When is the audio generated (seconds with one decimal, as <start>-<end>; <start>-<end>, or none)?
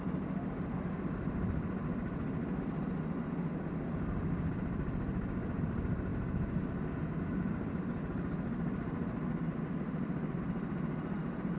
none